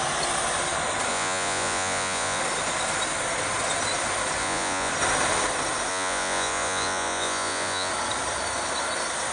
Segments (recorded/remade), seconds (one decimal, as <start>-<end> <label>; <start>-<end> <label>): 0.0-1.1 recorded; 1.1-2.4 remade; 2.4-4.4 recorded; 4.4-4.9 remade; 4.9-5.9 recorded; 5.9-7.9 remade; 7.9-9.3 recorded